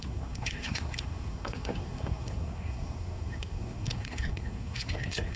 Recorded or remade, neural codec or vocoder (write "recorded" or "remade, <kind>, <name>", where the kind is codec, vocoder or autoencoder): remade, codec, SNAC